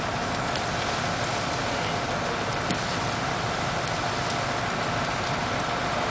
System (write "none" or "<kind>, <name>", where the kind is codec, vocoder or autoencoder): none